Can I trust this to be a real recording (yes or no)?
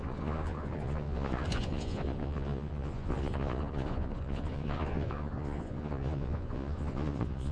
no